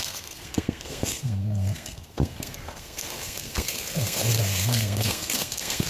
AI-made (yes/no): yes